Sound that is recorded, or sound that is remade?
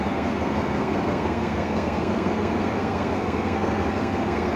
remade